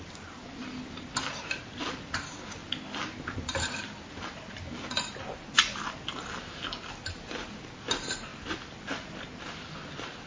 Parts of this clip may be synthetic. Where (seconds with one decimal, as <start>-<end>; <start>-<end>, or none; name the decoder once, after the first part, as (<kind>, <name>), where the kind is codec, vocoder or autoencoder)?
none